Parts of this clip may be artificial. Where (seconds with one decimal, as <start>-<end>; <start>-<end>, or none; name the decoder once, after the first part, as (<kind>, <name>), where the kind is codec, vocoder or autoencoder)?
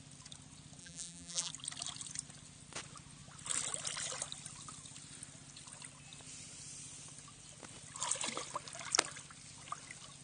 0.8-1.5 (vocoder, BigVGAN v2)